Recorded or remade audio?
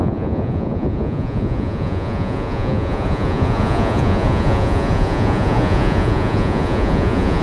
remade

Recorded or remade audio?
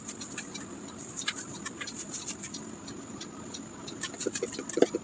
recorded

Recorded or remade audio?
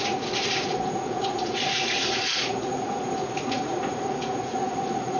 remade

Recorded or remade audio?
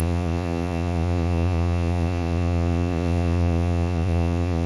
remade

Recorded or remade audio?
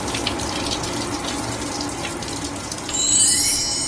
recorded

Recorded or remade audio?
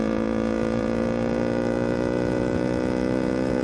remade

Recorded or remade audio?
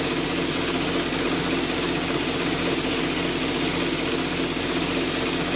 recorded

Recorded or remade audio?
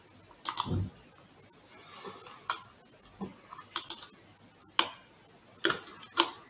recorded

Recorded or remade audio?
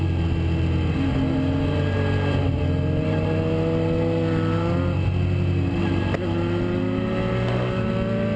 recorded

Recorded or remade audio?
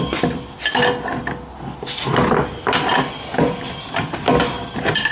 recorded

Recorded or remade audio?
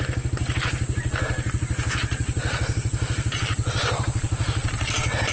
recorded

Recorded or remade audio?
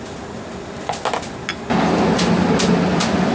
recorded